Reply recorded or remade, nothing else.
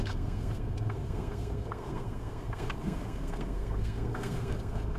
remade